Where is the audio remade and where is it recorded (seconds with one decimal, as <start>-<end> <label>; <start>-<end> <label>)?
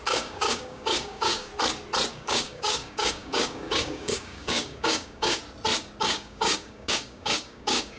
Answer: 0.0-1.5 remade; 1.5-2.1 recorded; 2.1-5.4 remade; 5.4-6.0 recorded; 6.0-8.0 remade